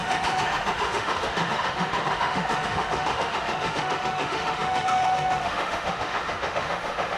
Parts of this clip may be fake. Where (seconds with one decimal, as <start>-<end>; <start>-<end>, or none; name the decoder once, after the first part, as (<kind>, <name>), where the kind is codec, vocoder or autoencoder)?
0.0-7.2 (autoencoder, DAC-VAE)